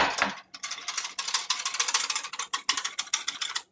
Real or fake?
real